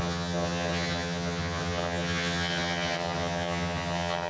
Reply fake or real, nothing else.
fake